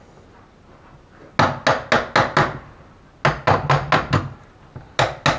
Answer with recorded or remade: recorded